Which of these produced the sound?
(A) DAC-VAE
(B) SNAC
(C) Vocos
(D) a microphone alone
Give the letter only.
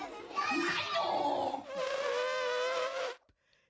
D